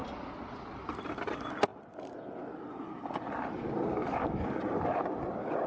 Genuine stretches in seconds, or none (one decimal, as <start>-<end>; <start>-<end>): 0.0-5.7